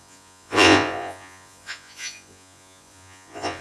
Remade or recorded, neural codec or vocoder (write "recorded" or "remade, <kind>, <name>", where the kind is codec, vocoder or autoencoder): remade, vocoder, Vocos